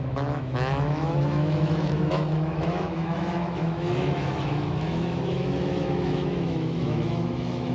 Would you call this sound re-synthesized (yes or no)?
yes